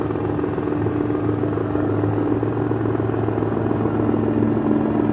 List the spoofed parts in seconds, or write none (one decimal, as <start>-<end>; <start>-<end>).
1.6-2.4